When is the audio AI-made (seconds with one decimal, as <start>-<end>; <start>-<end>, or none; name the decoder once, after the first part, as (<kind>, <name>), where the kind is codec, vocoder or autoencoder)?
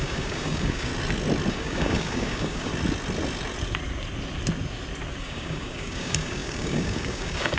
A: 0.0-0.9 (codec, DAC); 1.5-2.7; 5.2-7.6